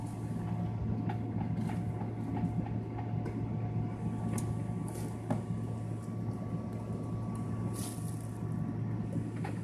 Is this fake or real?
real